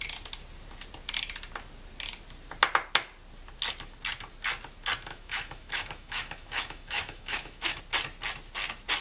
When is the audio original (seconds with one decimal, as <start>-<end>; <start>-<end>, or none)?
0.0-5.1; 7.8-9.0